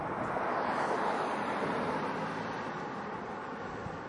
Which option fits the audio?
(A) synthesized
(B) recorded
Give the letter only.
B